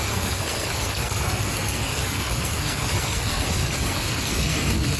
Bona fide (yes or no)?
no